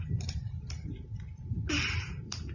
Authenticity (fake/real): fake